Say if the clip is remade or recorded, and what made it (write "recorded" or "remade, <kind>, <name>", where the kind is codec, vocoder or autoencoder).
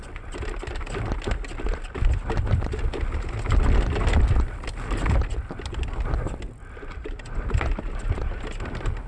recorded